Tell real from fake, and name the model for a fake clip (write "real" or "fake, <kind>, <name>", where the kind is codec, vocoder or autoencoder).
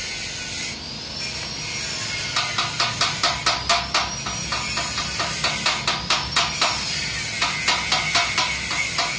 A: real